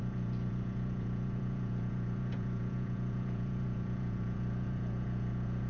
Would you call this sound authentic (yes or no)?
no